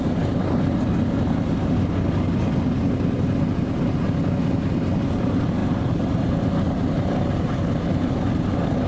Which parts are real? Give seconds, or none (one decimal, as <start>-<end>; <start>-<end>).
0.0-8.9